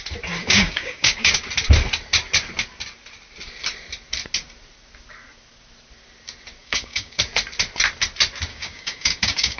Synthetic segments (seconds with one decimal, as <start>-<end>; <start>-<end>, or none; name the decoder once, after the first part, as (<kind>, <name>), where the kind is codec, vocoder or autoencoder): 0.4-1.3 (codec, DAC); 6.6-7.2; 8.5-9.6